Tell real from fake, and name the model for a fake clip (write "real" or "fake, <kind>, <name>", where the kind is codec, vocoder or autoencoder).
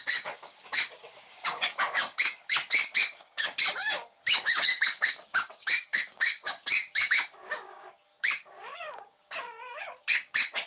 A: fake, codec, DAC